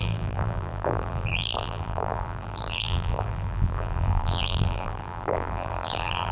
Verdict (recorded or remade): remade